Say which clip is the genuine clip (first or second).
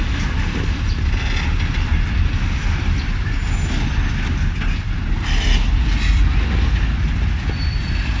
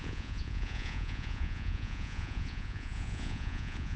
first